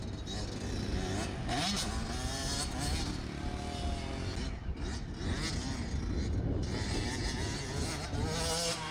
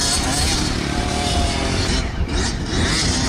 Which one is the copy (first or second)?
second